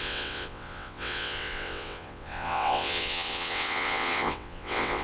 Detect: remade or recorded remade